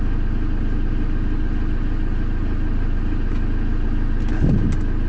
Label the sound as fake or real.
real